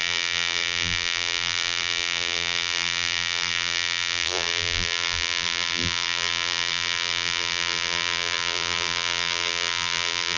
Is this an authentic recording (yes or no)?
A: no